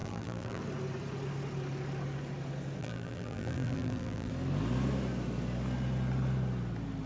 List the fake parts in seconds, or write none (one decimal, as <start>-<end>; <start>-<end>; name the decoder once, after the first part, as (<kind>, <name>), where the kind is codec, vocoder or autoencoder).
0.0-0.6 (vocoder, BigVGAN v2); 2.8-4.3